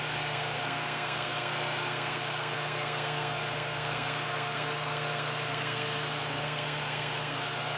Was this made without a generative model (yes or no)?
no